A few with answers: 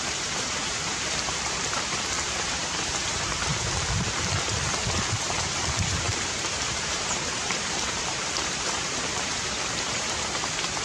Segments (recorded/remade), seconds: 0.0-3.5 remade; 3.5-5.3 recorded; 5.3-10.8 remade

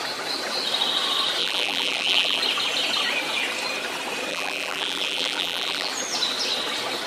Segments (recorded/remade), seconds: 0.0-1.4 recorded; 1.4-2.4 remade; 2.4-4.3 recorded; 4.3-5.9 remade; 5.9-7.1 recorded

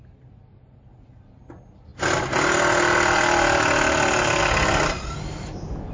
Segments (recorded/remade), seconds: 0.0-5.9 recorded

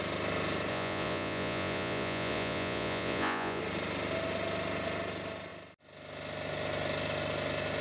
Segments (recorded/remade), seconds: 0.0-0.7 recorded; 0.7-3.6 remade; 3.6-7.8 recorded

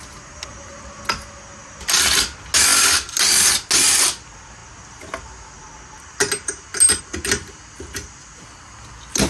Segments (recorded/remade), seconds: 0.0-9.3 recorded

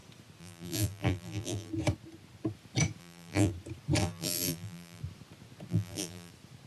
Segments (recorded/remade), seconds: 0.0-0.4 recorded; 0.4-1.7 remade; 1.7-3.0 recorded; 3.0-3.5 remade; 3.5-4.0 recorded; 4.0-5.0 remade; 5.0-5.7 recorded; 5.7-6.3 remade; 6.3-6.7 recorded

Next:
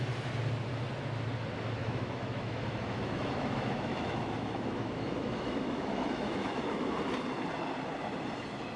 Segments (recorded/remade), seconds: 0.0-1.8 recorded; 1.8-7.0 remade; 7.0-8.8 recorded

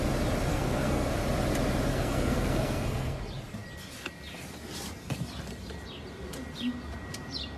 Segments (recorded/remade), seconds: 0.0-0.5 recorded; 0.5-1.1 remade; 1.1-1.9 recorded; 1.9-3.2 remade; 3.2-7.6 recorded